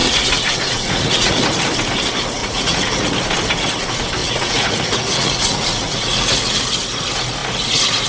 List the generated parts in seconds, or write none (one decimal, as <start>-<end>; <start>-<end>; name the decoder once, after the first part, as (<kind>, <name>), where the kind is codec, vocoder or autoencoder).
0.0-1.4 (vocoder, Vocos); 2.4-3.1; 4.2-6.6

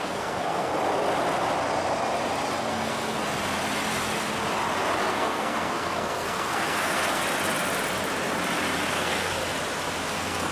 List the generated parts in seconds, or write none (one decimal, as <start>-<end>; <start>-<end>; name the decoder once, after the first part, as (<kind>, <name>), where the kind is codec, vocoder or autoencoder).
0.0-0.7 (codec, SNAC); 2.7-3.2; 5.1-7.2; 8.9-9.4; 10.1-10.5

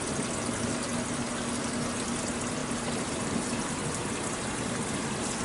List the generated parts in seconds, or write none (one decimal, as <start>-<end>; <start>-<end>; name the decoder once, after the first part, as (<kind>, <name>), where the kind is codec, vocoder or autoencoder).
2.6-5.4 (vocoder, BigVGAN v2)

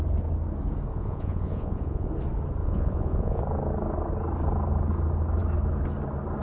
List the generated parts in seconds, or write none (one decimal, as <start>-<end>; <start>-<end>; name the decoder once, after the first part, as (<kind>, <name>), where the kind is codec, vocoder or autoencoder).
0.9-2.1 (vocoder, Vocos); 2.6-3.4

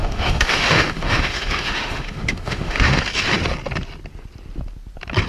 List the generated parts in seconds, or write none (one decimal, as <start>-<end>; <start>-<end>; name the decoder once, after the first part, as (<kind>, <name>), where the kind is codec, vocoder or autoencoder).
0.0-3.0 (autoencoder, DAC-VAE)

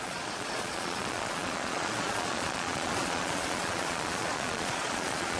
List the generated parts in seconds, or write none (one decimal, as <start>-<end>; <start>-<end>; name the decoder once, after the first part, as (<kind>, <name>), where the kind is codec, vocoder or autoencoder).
0.0-5.4 (vocoder, Vocos)

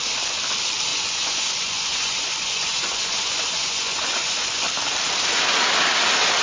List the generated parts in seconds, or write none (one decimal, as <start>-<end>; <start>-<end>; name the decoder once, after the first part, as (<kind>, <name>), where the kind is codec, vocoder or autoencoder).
0.9-4.7 (vocoder, Vocos)

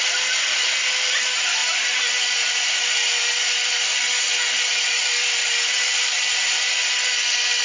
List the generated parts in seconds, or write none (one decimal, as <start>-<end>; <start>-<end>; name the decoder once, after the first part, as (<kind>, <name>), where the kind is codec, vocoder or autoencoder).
1.6-6.2 (vocoder, BigVGAN v2)